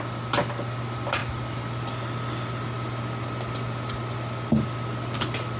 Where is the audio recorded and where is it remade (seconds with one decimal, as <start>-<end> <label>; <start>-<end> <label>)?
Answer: 0.0-5.6 recorded